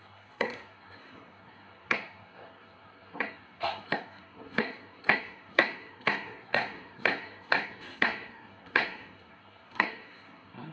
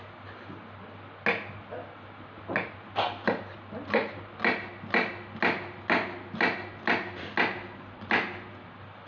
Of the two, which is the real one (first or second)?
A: second